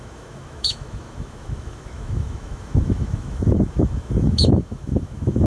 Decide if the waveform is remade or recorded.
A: remade